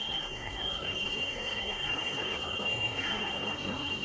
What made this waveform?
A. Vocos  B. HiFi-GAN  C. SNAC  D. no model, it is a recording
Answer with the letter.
C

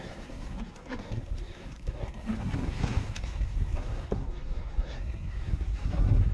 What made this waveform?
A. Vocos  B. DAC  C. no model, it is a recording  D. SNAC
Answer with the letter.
D